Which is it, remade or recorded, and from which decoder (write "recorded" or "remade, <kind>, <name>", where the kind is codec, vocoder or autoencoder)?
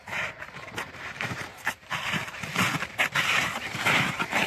remade, vocoder, BigVGAN v2